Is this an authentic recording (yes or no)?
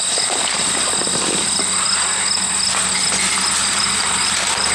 no